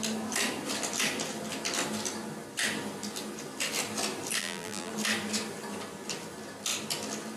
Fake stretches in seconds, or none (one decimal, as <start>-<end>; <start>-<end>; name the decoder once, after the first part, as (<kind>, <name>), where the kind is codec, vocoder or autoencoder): 4.4-4.9 (vocoder, BigVGAN v2)